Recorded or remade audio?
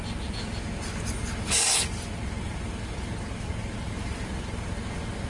recorded